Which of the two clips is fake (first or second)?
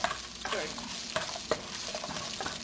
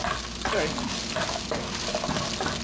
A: first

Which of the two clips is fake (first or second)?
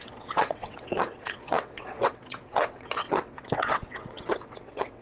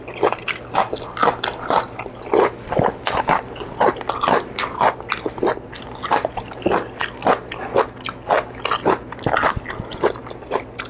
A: first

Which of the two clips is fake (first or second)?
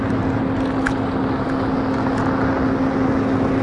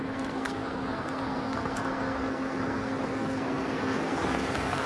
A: second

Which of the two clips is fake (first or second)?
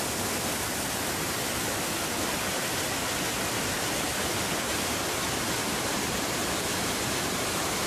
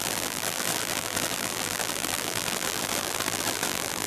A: second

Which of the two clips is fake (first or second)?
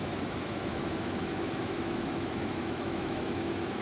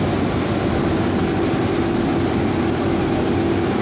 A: first